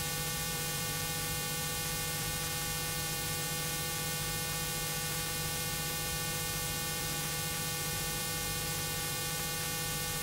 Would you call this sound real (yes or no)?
no